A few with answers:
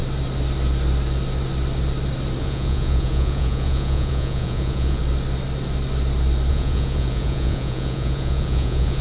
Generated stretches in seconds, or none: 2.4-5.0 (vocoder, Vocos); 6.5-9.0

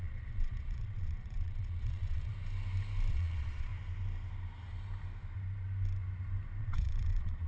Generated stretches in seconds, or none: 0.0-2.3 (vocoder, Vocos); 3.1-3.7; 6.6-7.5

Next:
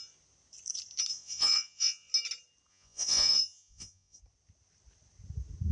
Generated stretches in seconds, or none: 1.1-2.1 (vocoder, Vocos); 2.7-4.2

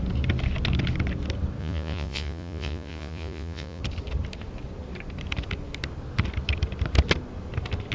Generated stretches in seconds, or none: 1.6-3.8 (vocoder, Vocos)

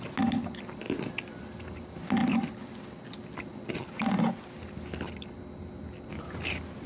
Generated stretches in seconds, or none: none

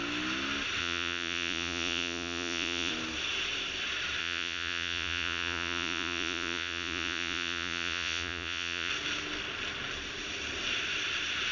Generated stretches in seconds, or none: 0.8-2.9 (vocoder, Vocos); 4.2-8.9